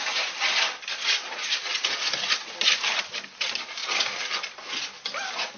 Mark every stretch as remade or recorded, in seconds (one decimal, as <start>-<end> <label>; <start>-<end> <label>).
0.0-5.6 recorded